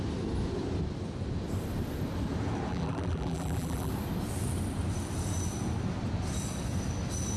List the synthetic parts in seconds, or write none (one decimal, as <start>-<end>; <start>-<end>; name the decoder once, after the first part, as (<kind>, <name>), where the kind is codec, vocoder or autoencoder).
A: 2.7-3.9 (vocoder, BigVGAN v2)